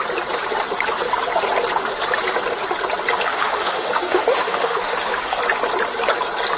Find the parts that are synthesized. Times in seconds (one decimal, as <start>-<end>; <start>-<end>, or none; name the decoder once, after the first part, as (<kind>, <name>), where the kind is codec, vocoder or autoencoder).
3.3-5.4 (autoencoder, DAC-VAE)